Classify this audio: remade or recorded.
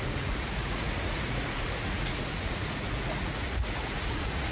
remade